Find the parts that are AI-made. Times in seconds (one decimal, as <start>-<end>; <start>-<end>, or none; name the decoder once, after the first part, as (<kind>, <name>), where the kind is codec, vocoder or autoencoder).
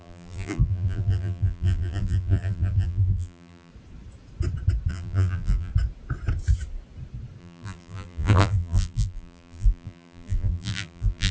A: 0.0-3.7 (vocoder, BigVGAN v2); 4.9-5.7; 7.4-11.3